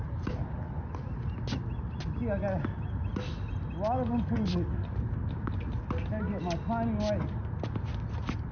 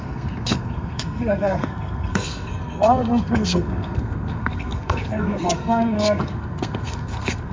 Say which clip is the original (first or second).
first